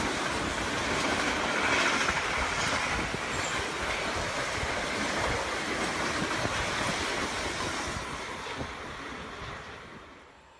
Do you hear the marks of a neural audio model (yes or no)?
yes